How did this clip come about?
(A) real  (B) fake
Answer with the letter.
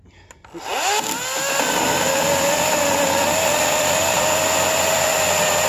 A